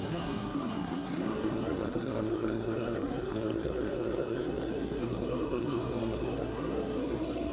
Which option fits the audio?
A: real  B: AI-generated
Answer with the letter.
B